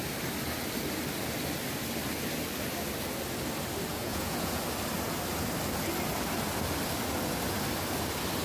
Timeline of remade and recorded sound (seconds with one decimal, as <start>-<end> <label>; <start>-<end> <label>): 0.0-3.9 recorded; 3.9-4.6 remade; 4.6-8.4 recorded